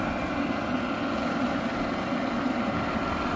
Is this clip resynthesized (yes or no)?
no